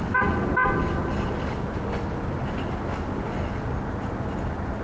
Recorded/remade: recorded